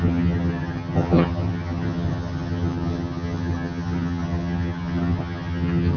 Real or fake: fake